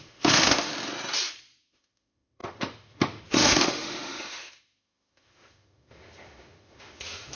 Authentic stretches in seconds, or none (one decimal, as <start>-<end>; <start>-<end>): 0.7-1.6